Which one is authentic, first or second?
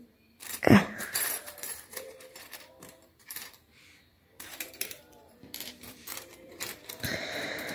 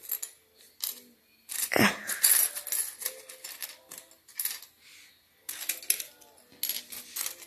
second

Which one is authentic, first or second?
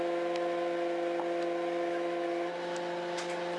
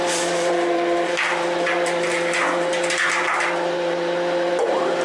first